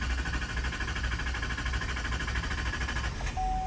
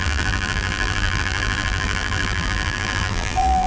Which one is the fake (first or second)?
second